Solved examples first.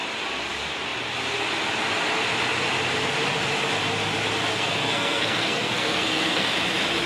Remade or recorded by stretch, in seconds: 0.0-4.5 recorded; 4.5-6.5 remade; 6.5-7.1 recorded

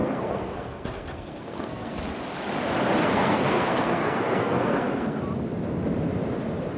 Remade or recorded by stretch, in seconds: 0.0-2.0 remade; 2.0-3.0 recorded; 3.0-5.2 remade; 5.2-6.8 recorded